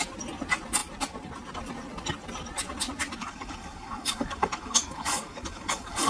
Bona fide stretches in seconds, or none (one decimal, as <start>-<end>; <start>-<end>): 0.0-3.2